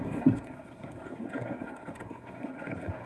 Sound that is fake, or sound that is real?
fake